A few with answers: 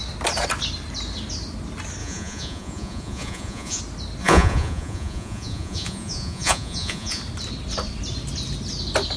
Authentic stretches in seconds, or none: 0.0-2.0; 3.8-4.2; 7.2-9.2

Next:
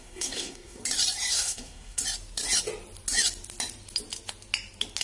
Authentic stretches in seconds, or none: 0.8-1.3; 2.0-5.0

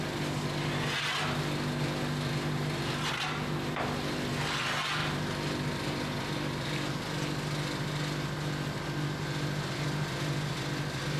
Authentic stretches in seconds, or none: 0.0-11.2

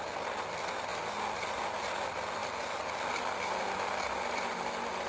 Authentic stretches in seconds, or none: 0.0-5.1

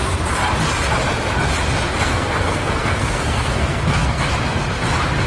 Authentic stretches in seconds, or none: 0.0-2.0; 4.3-5.3

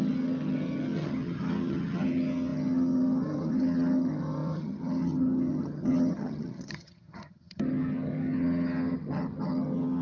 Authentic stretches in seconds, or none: none